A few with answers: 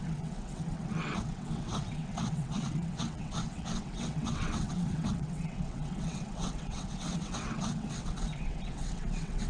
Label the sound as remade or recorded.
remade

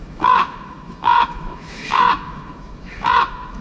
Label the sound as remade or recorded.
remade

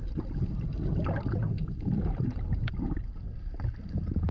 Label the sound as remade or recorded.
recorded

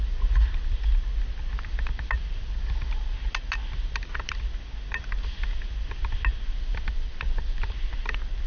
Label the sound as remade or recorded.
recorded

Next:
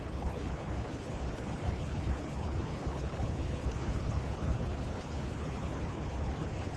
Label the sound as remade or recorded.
remade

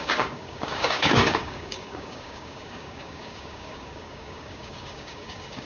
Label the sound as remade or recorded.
remade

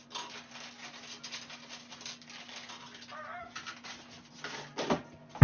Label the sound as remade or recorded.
recorded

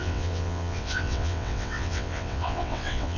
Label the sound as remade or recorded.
remade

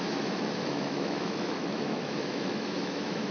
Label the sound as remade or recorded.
remade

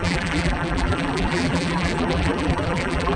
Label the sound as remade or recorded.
remade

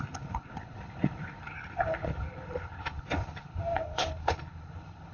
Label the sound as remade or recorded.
remade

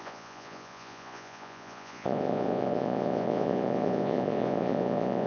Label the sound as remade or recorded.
remade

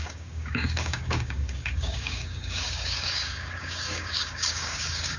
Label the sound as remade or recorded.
remade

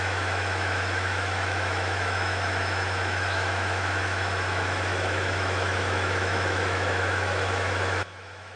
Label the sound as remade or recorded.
remade